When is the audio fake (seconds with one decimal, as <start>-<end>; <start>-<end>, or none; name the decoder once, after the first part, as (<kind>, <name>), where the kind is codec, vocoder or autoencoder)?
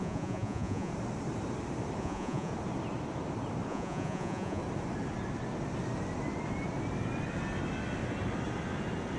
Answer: 0.0-0.9 (vocoder, Vocos); 2.0-2.5; 3.7-4.6